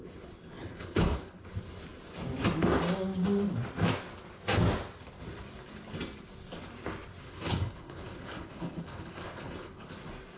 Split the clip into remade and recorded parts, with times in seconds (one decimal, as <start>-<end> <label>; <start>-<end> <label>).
0.0-0.7 recorded; 0.7-1.4 remade; 1.4-7.2 recorded; 7.2-9.9 remade; 9.9-10.4 recorded